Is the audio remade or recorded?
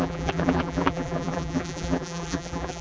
remade